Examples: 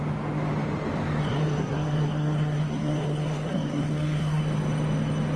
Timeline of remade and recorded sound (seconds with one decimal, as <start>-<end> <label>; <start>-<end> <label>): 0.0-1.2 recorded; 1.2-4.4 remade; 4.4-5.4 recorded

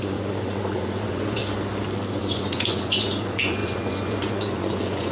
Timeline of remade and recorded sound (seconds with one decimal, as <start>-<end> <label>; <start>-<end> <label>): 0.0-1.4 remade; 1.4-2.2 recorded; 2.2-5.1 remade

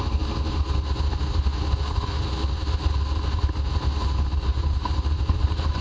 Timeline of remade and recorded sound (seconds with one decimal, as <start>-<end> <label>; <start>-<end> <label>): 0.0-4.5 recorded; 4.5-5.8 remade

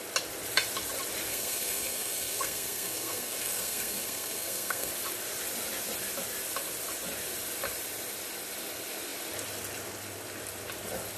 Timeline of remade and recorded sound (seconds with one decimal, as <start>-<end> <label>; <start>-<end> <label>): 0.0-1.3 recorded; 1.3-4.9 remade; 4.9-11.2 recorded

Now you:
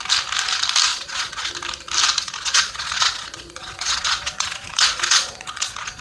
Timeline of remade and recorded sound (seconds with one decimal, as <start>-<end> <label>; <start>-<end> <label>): 0.0-0.9 recorded; 0.9-1.5 remade; 1.5-2.2 recorded; 2.2-6.0 remade

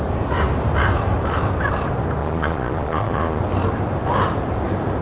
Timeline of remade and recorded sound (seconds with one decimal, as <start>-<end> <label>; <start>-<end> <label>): 0.0-2.2 recorded; 2.2-3.4 remade; 3.4-5.0 recorded

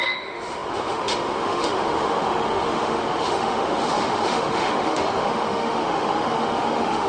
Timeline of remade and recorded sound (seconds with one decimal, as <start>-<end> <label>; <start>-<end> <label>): 0.0-7.1 remade